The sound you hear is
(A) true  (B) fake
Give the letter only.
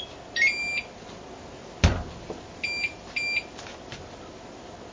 A